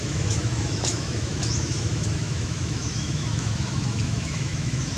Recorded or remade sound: remade